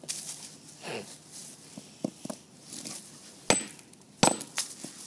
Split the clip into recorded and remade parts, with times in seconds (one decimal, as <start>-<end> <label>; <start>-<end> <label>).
0.0-5.1 recorded